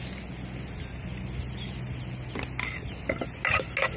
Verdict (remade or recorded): recorded